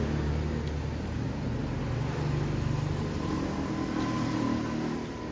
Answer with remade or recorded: recorded